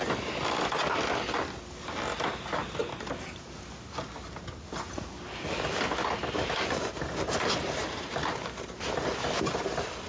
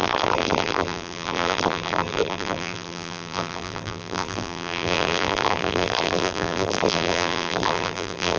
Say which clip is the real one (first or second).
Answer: first